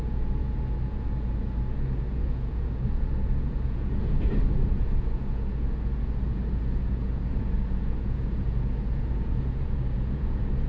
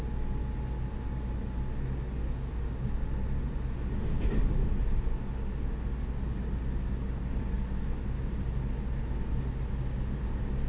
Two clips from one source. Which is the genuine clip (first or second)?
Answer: second